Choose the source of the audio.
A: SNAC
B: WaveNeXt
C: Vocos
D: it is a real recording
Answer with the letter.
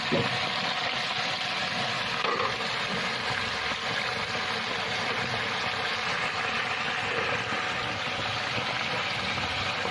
D